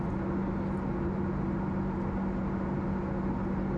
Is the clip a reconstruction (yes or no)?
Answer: no